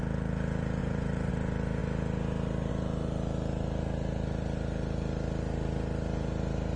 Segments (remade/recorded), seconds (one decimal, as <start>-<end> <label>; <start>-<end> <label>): 0.0-0.8 recorded; 0.8-1.3 remade; 1.3-6.8 recorded